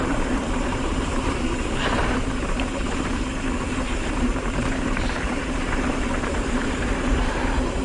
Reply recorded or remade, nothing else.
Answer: remade